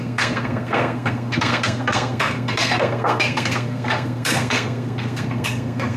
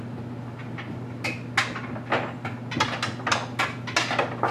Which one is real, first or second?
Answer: second